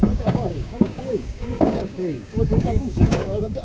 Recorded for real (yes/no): no